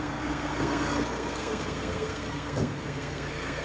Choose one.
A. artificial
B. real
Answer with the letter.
A